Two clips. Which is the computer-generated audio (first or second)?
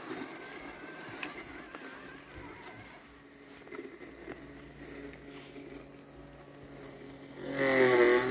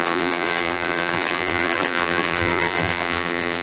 second